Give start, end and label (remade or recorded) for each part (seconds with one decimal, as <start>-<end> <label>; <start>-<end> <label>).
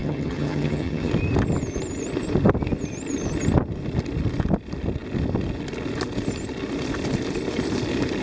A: 0.0-1.1 remade; 1.1-8.2 recorded